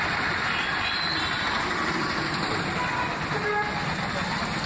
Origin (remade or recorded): recorded